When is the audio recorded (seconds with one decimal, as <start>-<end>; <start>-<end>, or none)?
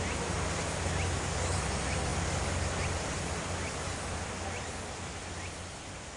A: 0.0-6.2